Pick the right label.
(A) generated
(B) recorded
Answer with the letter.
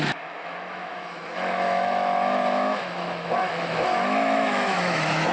A